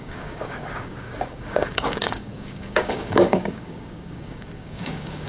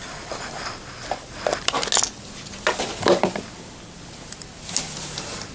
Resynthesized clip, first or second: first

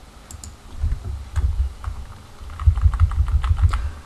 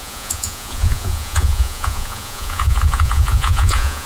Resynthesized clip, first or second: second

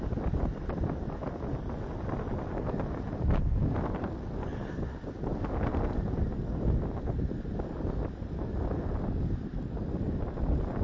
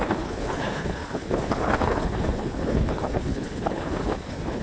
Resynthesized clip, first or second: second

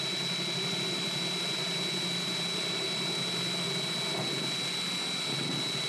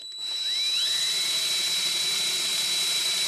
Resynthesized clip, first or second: second